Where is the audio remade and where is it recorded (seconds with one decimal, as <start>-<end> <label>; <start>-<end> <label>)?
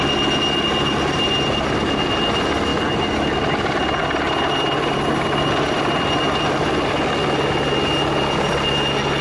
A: 0.0-9.2 recorded